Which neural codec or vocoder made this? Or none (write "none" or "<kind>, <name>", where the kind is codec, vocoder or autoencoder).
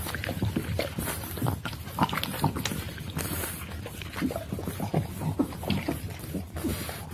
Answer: none